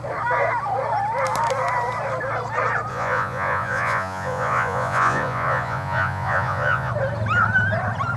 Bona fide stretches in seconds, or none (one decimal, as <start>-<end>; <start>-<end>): 0.0-2.9; 6.9-8.2